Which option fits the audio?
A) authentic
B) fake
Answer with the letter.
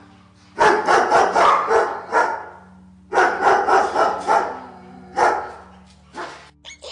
A